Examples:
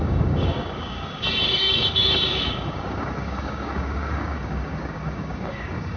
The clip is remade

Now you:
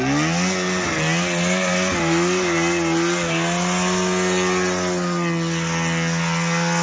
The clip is recorded